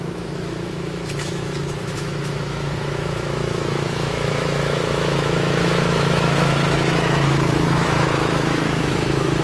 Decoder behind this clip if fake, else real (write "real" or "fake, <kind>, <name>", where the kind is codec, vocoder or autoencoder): fake, autoencoder, DAC-VAE